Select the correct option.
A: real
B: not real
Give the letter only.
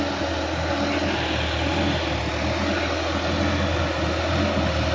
A